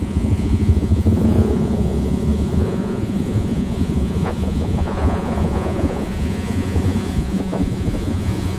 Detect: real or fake fake